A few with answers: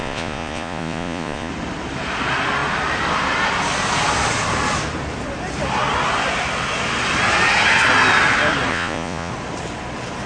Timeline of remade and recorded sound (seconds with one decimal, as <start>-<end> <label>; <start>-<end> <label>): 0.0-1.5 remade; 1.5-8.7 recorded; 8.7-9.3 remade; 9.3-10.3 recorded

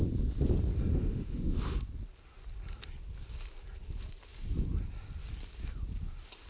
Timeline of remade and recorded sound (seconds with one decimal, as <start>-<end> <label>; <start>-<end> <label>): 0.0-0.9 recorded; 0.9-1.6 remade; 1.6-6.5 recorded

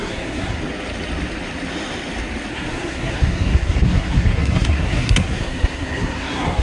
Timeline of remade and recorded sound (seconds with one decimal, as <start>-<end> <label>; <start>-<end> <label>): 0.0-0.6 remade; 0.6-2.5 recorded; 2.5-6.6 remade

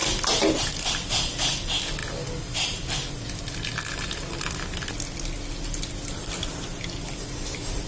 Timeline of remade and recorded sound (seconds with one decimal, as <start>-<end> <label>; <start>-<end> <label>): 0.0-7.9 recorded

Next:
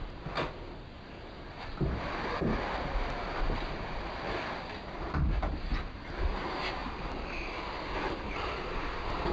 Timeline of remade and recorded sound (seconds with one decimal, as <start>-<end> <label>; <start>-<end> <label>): 0.0-9.3 recorded